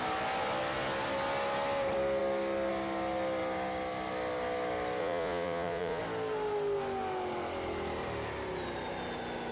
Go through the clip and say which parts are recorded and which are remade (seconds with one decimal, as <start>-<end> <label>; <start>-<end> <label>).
0.0-5.0 recorded; 5.0-6.0 remade; 6.0-9.5 recorded